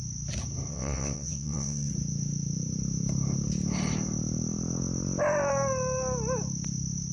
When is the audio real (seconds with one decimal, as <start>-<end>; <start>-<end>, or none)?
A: 0.0-0.7; 1.9-7.1